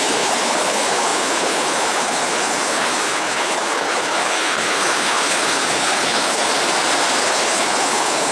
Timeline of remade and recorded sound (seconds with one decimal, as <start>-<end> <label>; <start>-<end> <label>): 0.0-6.5 remade; 6.5-7.2 recorded; 7.2-8.3 remade